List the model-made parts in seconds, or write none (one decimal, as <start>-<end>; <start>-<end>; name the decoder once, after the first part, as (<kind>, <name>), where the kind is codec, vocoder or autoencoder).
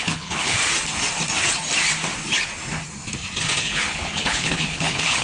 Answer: 0.0-0.6 (codec, HILCodec); 3.6-5.2